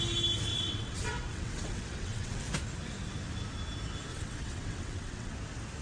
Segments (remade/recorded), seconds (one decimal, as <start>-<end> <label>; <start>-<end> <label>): 0.0-0.5 recorded; 0.5-2.4 remade; 2.4-4.1 recorded; 4.1-5.3 remade; 5.3-5.8 recorded